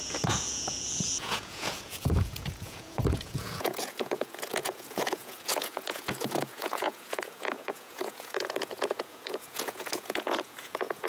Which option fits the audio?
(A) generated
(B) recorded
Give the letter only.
A